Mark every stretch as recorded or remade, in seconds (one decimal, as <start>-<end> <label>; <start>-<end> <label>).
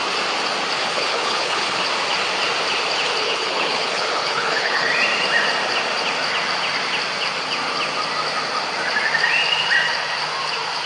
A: 0.0-0.8 recorded; 0.8-1.8 remade; 1.8-3.2 recorded; 3.2-4.9 remade; 4.9-10.9 recorded